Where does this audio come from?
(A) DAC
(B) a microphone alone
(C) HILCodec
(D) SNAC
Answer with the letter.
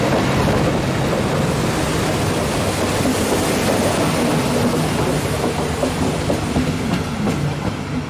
B